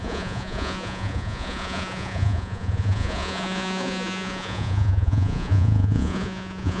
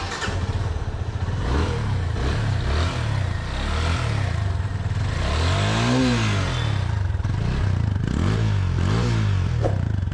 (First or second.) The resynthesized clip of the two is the first